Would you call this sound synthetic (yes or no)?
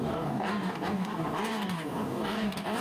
yes